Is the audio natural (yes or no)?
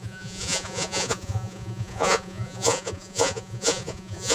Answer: no